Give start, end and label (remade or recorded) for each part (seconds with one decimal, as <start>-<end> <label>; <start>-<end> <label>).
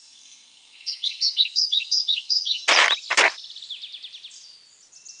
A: 0.0-2.6 remade; 2.6-5.2 recorded